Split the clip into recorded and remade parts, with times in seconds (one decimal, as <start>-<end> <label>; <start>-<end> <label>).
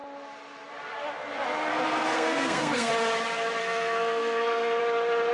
0.0-1.7 recorded; 1.7-2.9 remade; 2.9-3.6 recorded; 3.6-4.8 remade; 4.8-5.3 recorded